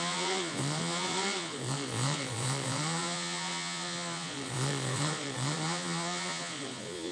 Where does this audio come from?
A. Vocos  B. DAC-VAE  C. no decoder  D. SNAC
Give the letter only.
A